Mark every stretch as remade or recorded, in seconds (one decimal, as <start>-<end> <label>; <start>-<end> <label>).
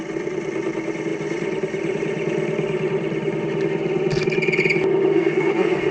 0.0-5.1 recorded; 5.1-5.9 remade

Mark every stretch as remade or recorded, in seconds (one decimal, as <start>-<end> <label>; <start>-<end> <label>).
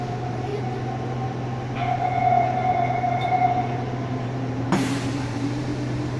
0.0-0.5 remade; 0.5-4.2 recorded; 4.2-5.7 remade; 5.7-6.2 recorded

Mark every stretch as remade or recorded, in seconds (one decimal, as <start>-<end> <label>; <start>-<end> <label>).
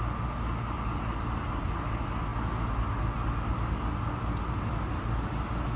0.0-5.8 recorded